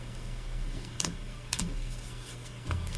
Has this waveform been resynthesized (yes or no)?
yes